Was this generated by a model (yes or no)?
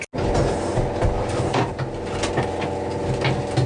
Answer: no